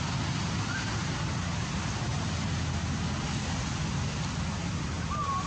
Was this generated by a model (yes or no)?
no